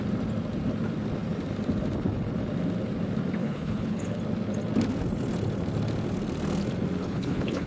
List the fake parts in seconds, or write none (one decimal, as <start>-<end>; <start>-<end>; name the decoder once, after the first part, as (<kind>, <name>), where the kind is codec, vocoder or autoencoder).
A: 3.4-4.2 (codec, HILCodec); 7.0-7.7